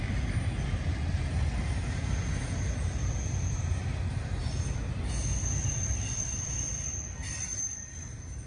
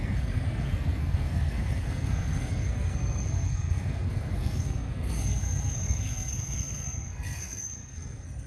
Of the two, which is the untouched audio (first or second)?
first